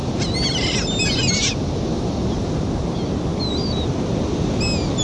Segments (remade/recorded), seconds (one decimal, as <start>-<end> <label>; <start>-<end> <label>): 0.0-5.0 recorded